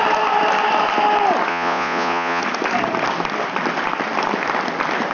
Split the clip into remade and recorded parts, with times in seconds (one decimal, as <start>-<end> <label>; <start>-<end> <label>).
0.0-1.5 recorded; 1.5-2.4 remade; 2.4-5.1 recorded